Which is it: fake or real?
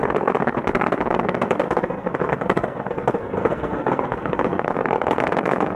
fake